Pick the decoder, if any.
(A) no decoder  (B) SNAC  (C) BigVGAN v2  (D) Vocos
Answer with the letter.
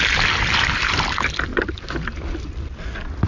A